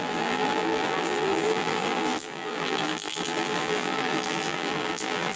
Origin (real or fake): fake